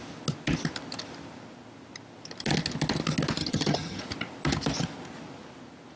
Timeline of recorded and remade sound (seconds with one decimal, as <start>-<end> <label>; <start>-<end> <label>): 0.0-3.4 recorded; 3.4-4.0 remade; 4.0-6.0 recorded